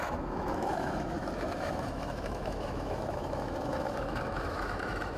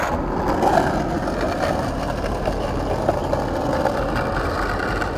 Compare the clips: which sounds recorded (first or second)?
second